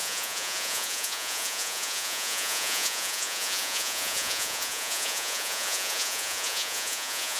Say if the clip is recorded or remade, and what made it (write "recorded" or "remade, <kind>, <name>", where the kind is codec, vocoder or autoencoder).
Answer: remade, vocoder, Vocos